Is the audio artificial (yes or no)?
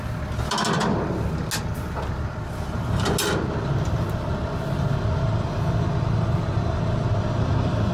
no